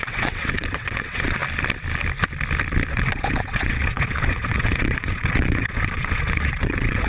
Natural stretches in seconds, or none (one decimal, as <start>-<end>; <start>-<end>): 1.4-2.9